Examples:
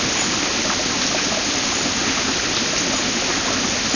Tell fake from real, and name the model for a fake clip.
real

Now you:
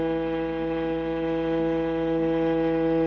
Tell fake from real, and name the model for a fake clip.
real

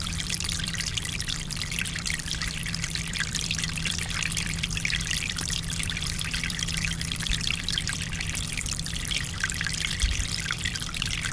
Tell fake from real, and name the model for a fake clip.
fake, vocoder, BigVGAN v2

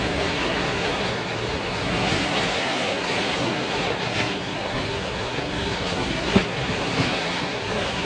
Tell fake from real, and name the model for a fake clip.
fake, codec, SNAC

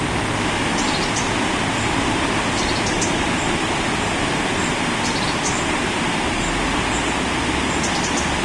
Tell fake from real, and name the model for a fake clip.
real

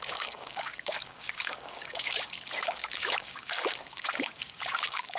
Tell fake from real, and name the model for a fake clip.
fake, codec, DAC